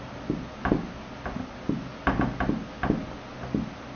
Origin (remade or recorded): recorded